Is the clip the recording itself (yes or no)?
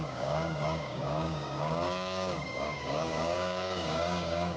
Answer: no